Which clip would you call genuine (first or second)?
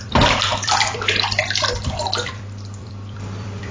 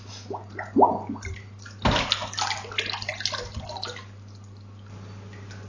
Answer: second